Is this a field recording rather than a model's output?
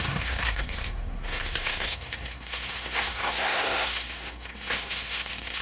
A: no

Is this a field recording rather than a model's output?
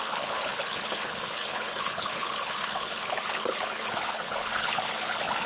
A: no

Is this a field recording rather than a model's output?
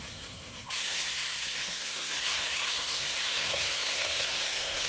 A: no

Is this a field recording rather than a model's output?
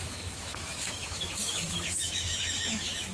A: no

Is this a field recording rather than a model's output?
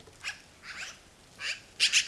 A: yes